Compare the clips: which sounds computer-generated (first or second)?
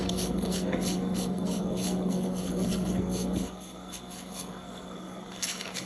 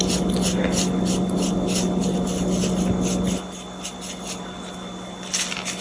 first